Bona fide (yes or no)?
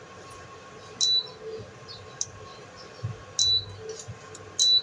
yes